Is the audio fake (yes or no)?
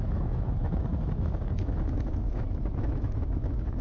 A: yes